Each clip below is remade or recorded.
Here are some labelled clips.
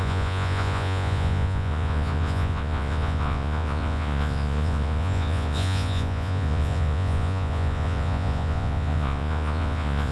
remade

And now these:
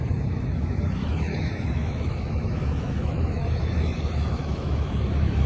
remade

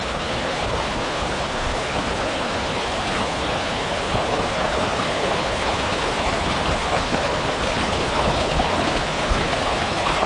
remade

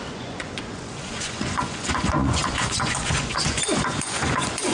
remade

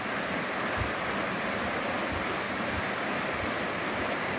recorded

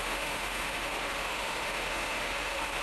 remade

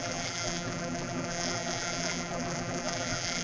remade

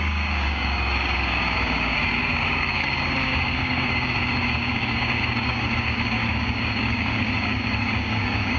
remade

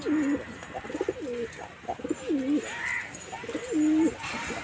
recorded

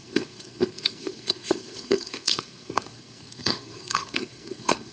remade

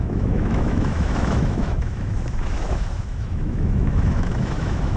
remade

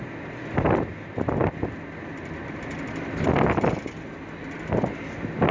recorded